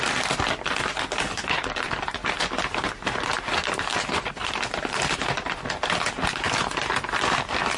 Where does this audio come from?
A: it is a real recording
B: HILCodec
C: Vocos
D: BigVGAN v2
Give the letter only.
D